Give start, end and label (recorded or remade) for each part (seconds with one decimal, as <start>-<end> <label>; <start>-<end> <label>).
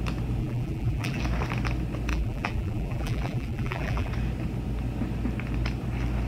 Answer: 0.0-0.4 recorded; 0.4-1.2 remade; 1.2-2.1 recorded; 2.1-4.1 remade; 4.1-6.3 recorded